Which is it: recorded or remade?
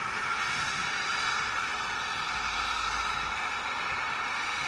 recorded